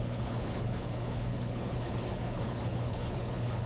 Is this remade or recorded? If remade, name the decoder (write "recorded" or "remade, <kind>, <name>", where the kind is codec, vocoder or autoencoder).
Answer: remade, codec, HILCodec